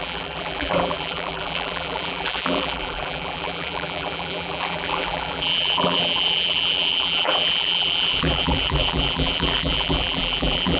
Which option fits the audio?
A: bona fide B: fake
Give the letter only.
B